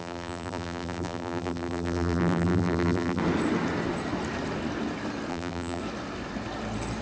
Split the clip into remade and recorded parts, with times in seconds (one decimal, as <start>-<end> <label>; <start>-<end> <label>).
0.0-3.2 remade; 3.2-5.3 recorded; 5.3-5.8 remade; 5.8-7.0 recorded